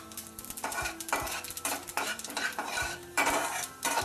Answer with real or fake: fake